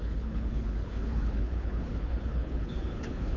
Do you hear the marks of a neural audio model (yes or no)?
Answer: yes